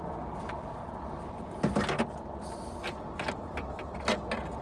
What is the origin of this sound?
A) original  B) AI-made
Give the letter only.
A